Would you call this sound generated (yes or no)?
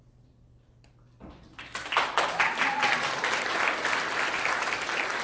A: no